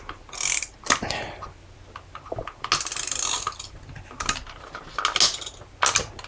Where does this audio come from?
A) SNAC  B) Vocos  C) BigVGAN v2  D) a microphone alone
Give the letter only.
D